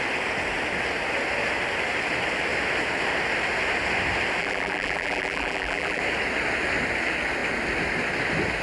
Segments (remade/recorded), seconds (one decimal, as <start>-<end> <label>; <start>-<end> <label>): 0.0-4.4 recorded; 4.4-6.0 remade; 6.0-8.6 recorded